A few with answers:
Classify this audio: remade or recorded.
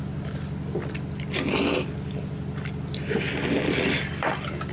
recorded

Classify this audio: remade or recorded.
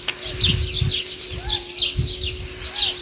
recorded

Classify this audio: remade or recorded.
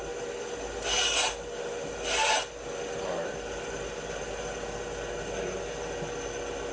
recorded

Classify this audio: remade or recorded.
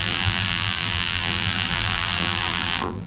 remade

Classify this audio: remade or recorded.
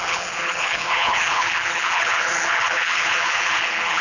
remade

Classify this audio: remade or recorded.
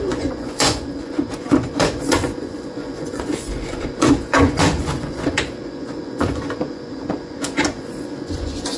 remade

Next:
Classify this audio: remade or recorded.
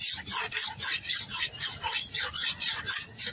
recorded